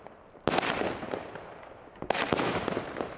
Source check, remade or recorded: recorded